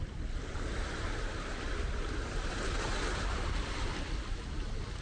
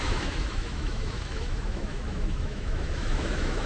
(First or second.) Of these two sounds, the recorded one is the first